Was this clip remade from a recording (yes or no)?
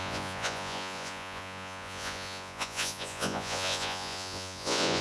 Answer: yes